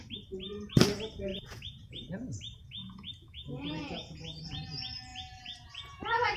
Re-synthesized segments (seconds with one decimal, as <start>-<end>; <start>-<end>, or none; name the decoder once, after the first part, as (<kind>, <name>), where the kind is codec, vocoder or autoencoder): 1.3-2.1 (vocoder, Vocos); 2.8-4.4; 5.1-6.4